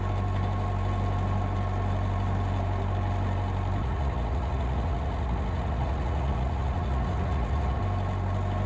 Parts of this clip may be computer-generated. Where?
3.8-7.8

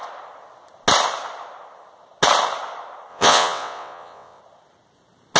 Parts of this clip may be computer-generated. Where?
3.1-4.4

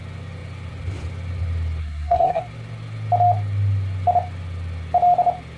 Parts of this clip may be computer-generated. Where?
1.8-2.4

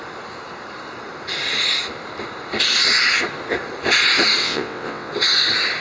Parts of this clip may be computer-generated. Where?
4.4-5.1

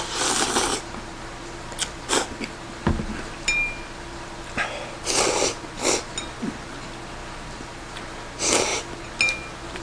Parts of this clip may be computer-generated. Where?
none

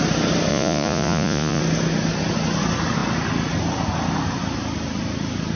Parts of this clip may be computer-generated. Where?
0.5-1.6

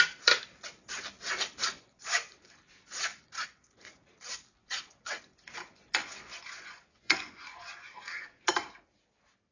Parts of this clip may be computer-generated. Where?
1.6-2.6; 3.1-4.0; 4.6-8.5

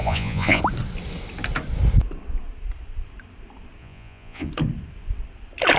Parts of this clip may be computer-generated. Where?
0.0-0.6; 3.8-4.5